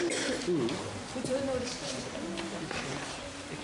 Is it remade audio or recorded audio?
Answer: recorded